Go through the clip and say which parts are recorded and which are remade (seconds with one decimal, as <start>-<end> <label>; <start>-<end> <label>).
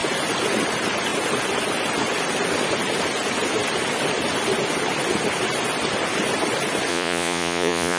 0.0-6.9 recorded; 6.9-8.0 remade